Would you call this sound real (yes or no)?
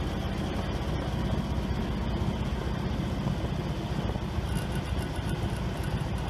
yes